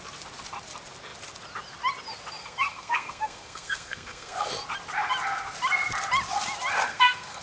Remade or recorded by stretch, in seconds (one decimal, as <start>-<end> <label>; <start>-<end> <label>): 0.0-2.4 recorded; 2.4-4.5 remade; 4.5-6.9 recorded; 6.9-7.4 remade